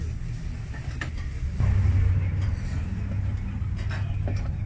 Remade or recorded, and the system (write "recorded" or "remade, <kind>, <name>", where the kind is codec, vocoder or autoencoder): recorded